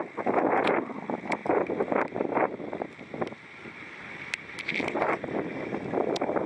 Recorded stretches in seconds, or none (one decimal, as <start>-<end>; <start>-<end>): 0.0-6.5